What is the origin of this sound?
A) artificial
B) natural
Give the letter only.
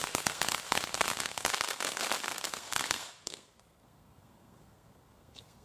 A